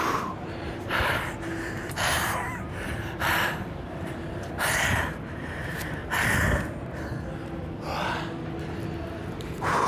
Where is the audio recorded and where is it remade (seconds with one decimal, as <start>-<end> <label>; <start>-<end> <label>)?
0.0-6.0 remade; 6.0-9.3 recorded; 9.3-9.9 remade